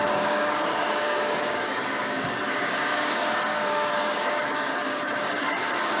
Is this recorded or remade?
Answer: remade